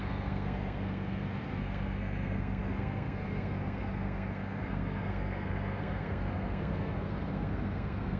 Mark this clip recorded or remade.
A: remade